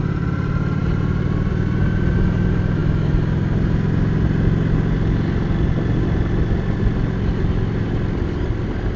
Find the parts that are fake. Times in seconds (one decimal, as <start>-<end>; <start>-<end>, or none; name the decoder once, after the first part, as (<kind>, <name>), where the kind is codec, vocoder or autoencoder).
none